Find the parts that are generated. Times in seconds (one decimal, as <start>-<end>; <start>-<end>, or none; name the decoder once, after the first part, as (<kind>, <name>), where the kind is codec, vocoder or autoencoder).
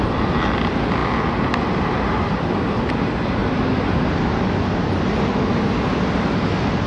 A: 3.4-4.4 (vocoder, BigVGAN v2)